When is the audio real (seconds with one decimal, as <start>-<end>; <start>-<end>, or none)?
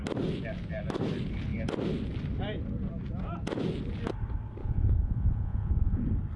0.0-4.6; 6.0-6.4